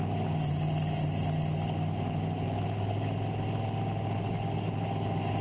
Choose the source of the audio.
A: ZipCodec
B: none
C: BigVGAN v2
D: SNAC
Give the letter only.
B